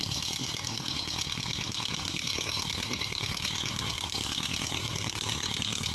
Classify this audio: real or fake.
fake